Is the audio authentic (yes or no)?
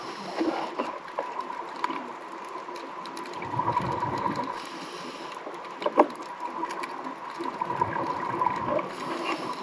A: yes